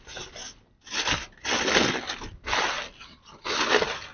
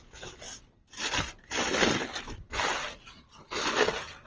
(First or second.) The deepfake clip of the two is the second